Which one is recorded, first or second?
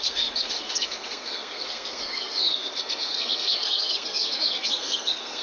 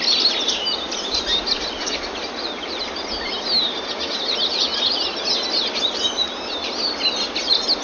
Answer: second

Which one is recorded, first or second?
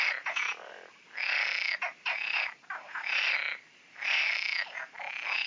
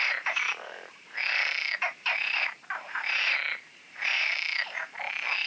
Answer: first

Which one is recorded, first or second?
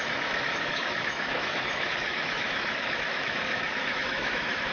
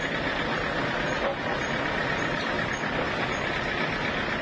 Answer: second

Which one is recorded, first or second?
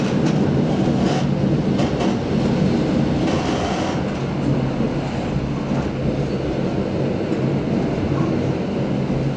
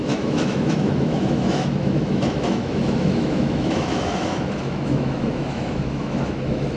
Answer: first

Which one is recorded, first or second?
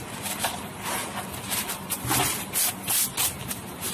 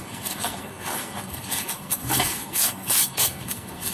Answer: first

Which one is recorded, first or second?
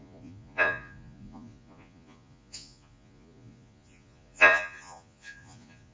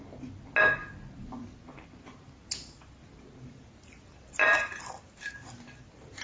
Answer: second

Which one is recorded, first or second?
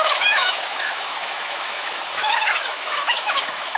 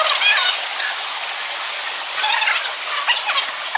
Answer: second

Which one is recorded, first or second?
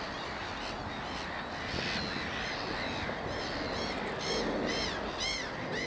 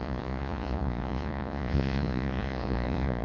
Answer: first